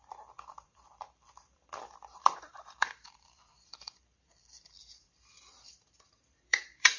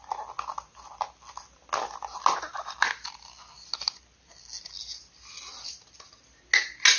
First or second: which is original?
second